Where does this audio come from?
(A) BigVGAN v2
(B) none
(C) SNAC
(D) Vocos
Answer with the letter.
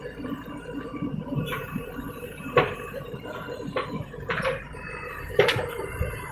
A